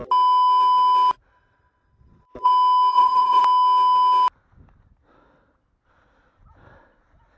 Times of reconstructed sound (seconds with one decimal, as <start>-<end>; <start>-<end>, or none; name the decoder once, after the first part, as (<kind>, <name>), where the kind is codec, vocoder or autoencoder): 1.3-2.5 (vocoder, WaveNeXt); 2.9-3.4